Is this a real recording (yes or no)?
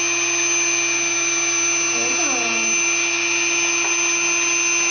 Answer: yes